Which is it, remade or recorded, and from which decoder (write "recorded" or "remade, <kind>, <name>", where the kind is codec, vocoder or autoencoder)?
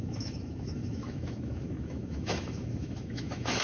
remade, autoencoder, DAC-VAE